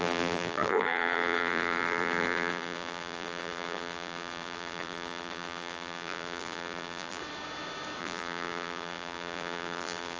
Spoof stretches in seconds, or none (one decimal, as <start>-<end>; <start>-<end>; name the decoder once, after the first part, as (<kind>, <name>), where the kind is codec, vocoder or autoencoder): 0.0-7.2 (vocoder, BigVGAN v2); 8.0-10.2